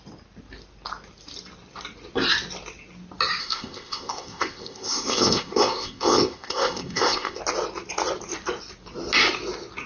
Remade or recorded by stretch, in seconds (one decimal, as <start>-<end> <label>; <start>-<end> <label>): 0.0-3.4 recorded; 3.4-7.4 remade; 7.4-9.9 recorded

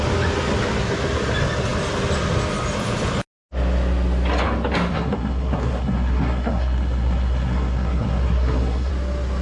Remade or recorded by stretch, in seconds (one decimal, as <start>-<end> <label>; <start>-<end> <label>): 0.0-4.9 recorded; 4.9-8.9 remade; 8.9-9.4 recorded

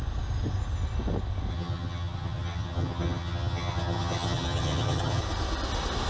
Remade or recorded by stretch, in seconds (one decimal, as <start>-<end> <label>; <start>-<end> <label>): 0.0-1.5 recorded; 1.5-5.2 remade; 5.2-6.1 recorded

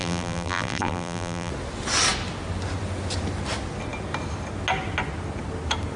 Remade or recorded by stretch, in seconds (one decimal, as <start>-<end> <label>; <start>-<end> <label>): 0.0-1.5 remade; 1.5-6.0 recorded

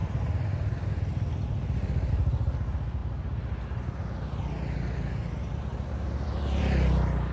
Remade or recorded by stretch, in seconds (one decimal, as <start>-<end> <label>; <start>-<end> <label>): 0.0-5.7 recorded; 5.7-6.6 remade; 6.6-7.3 recorded

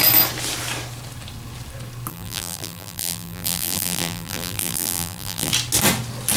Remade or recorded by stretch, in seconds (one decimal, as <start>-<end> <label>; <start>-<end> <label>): 0.0-2.1 recorded; 2.1-5.5 remade; 5.5-6.4 recorded